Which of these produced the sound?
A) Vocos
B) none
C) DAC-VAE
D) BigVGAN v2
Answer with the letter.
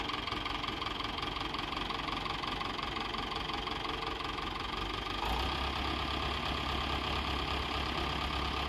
B